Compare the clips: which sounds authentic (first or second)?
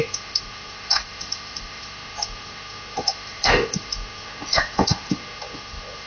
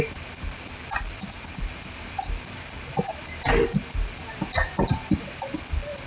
second